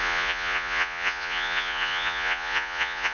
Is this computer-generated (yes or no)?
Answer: yes